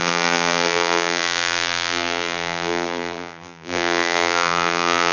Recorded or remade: remade